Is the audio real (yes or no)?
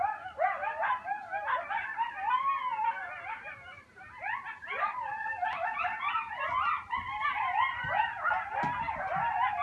yes